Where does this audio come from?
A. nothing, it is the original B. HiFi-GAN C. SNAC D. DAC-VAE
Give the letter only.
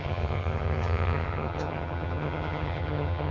B